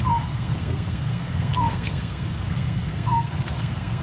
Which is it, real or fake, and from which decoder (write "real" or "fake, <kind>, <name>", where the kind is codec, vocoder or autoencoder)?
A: fake, codec, SNAC